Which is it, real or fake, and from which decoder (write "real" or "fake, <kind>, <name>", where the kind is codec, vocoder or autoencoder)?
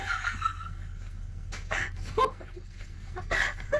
fake, codec, SNAC